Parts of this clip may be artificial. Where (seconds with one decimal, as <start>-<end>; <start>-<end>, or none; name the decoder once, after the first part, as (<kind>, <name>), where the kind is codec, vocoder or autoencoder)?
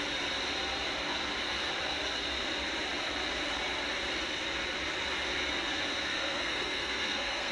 6.1-7.5 (codec, SNAC)